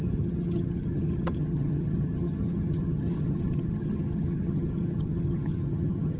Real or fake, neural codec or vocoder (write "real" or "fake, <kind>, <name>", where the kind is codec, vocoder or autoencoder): fake, vocoder, HiFi-GAN